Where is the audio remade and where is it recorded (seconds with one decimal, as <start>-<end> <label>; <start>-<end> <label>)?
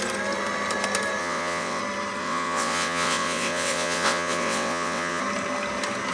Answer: 0.0-1.2 recorded; 1.2-1.8 remade; 1.8-2.2 recorded; 2.2-5.2 remade; 5.2-6.1 recorded